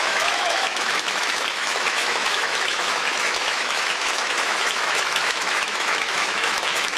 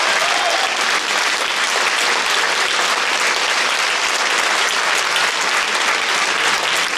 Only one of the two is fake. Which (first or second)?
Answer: first